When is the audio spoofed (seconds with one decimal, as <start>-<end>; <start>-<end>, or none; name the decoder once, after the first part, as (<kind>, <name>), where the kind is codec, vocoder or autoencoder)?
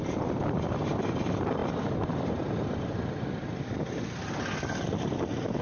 none